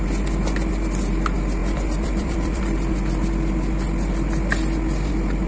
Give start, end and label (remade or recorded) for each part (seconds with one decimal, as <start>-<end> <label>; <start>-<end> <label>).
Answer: 0.0-1.6 recorded; 1.6-2.6 remade; 2.6-5.5 recorded